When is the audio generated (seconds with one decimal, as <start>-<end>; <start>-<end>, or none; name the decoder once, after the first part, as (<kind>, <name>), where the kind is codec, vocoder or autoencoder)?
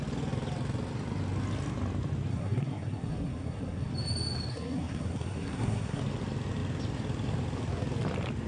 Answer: 2.3-3.9 (codec, SNAC); 4.5-6.0